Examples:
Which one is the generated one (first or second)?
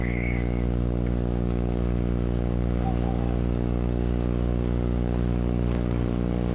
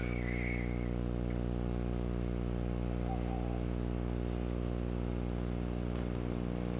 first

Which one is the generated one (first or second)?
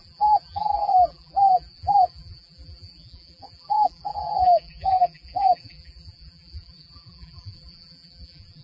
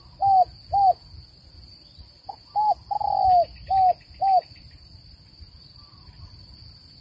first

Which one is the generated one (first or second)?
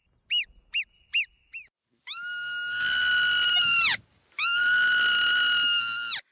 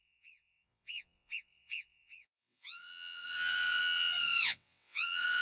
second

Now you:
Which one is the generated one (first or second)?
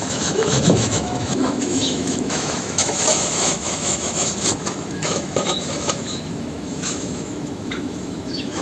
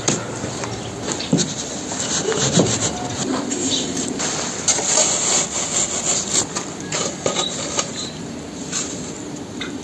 first